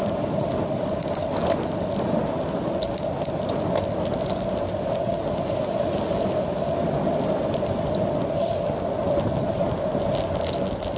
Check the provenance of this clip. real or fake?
real